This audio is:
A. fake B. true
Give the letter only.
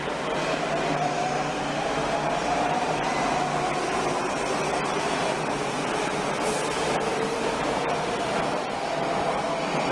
B